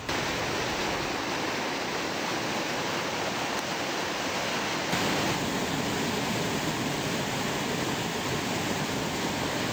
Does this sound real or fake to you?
real